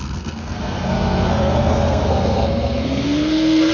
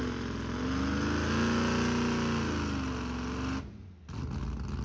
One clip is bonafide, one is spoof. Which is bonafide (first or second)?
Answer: second